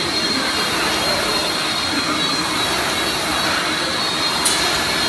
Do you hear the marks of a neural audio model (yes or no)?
no